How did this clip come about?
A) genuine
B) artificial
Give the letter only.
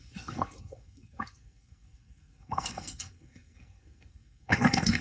B